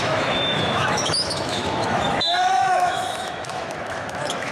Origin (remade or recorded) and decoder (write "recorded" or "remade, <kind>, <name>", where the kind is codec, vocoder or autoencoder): remade, autoencoder, DAC-VAE